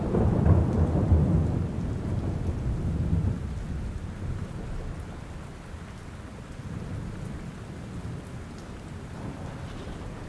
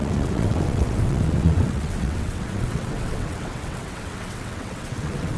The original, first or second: first